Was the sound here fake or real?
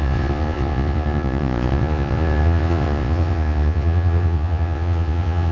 fake